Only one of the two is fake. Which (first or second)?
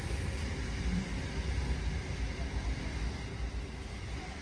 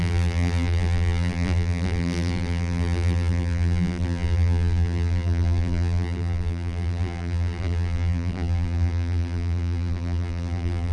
second